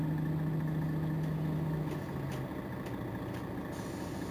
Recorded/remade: recorded